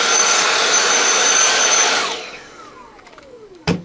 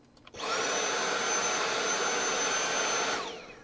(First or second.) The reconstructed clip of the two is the first